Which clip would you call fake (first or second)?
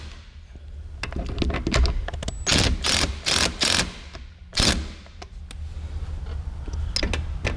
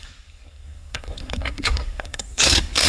second